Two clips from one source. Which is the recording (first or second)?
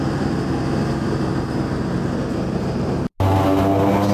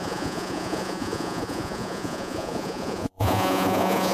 first